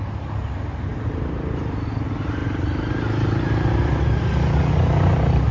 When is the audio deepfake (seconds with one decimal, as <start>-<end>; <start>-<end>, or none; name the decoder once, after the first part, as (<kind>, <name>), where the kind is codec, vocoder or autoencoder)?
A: none